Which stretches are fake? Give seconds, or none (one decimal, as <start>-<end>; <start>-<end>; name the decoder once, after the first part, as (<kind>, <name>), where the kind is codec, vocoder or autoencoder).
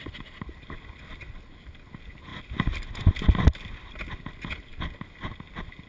none